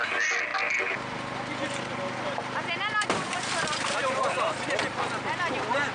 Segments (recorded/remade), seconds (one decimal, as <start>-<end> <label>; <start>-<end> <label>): 0.0-5.9 recorded